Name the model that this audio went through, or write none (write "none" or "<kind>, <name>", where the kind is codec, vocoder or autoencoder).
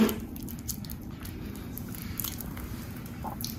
vocoder, BigVGAN v2